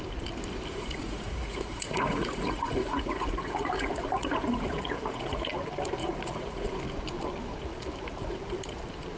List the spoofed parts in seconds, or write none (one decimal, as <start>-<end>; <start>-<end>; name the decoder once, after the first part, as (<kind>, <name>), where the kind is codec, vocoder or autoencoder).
0.7-5.5 (vocoder, Vocos); 6.0-6.7